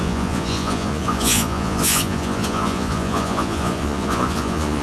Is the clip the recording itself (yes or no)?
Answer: no